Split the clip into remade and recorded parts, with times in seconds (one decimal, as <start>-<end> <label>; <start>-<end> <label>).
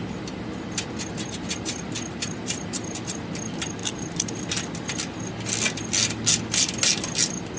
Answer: 0.0-3.8 recorded; 3.8-4.5 remade; 4.5-7.6 recorded